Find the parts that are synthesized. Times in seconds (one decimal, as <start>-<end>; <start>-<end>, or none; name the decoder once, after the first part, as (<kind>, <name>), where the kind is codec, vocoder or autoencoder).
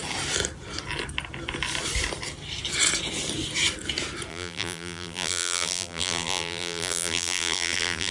4.3-8.1 (vocoder, BigVGAN v2)